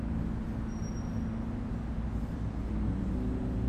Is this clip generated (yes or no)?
no